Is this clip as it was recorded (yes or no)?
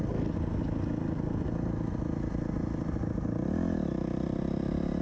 yes